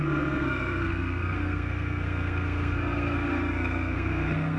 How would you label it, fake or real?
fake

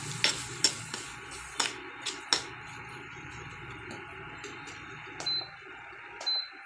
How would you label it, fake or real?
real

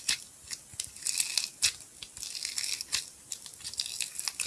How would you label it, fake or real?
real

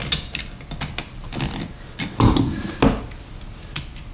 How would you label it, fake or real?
real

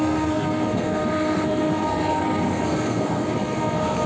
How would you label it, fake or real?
fake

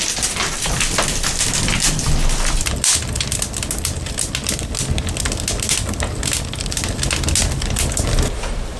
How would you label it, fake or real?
real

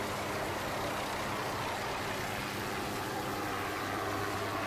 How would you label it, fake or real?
real